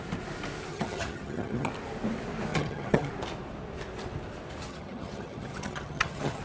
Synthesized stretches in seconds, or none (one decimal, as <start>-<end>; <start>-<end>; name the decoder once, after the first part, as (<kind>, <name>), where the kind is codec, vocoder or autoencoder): 0.7-1.7 (vocoder, HiFi-GAN); 2.5-3.1; 4.7-6.4